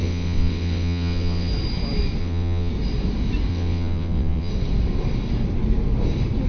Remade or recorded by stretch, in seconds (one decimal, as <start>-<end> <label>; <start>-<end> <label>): 0.0-1.5 remade; 1.5-2.2 recorded; 2.2-2.7 remade; 2.7-3.5 recorded; 3.5-4.5 remade; 4.5-6.5 recorded